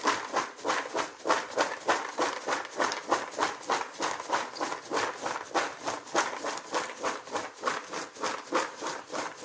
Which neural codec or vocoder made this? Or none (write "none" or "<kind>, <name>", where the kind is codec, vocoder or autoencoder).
none